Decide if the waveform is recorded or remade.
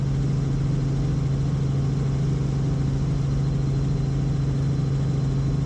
recorded